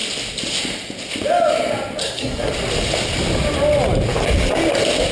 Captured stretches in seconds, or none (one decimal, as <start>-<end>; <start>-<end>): 0.0-2.0; 2.5-5.1